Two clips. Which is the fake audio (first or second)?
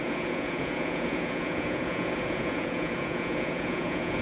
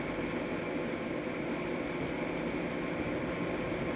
first